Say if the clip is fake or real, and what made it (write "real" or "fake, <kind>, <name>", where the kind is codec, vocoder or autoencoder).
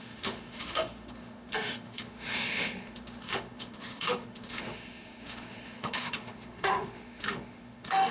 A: fake, autoencoder, DAC-VAE